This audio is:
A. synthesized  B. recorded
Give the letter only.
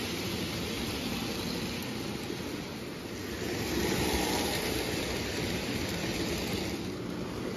B